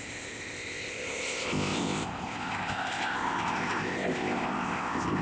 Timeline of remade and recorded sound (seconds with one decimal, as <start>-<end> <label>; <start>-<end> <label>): 0.0-5.2 remade